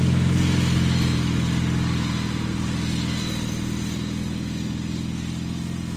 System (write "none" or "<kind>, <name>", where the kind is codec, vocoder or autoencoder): none